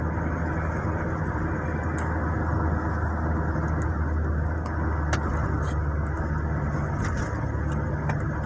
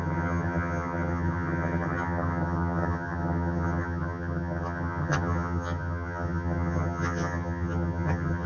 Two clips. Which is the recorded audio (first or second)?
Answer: first